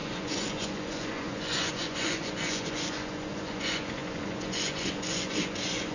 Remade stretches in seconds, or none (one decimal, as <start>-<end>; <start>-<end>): 0.0-5.9